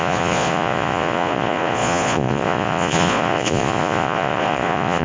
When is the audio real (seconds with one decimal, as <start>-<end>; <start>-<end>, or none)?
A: none